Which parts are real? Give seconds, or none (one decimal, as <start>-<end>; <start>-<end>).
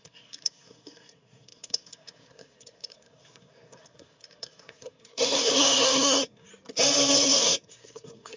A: 6.5-7.1